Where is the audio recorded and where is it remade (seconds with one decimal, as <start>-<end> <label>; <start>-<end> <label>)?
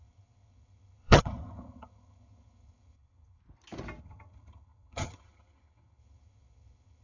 0.0-3.4 remade; 3.4-4.0 recorded; 4.0-7.0 remade